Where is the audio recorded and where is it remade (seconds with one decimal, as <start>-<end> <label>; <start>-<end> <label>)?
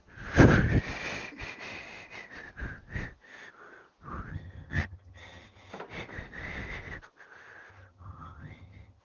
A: 0.0-4.3 recorded; 4.3-5.7 remade; 5.7-7.7 recorded; 7.7-9.0 remade